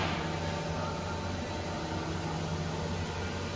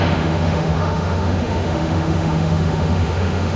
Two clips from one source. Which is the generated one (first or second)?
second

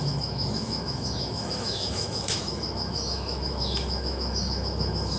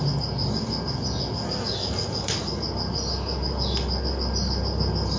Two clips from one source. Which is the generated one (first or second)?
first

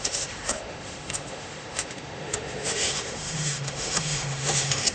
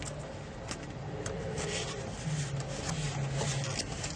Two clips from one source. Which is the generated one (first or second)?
first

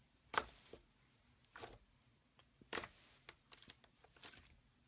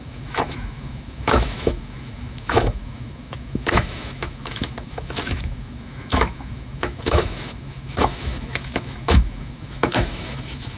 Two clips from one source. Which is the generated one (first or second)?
second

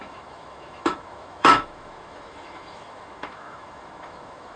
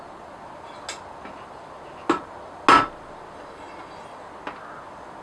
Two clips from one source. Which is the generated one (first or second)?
first